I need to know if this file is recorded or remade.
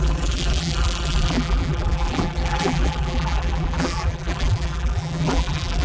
remade